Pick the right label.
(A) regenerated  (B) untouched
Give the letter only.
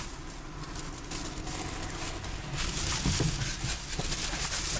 B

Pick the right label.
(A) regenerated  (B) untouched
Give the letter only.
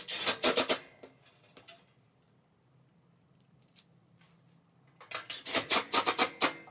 B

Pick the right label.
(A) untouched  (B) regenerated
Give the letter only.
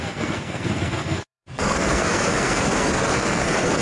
B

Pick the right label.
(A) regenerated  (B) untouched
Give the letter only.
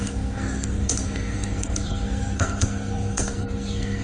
A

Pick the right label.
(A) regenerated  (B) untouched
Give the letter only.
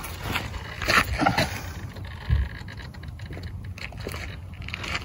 B